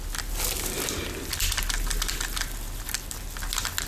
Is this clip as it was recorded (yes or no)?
yes